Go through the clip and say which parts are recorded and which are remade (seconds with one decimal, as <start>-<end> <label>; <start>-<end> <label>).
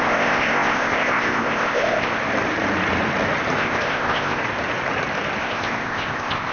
0.0-2.2 remade; 2.2-3.6 recorded; 3.6-4.4 remade; 4.4-5.4 recorded; 5.4-6.5 remade